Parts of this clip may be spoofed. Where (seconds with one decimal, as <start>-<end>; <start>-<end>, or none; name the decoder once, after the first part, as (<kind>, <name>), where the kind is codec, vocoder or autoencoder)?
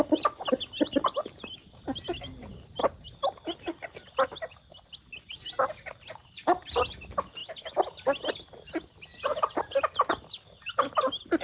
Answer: none